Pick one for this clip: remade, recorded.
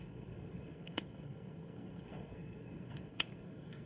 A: remade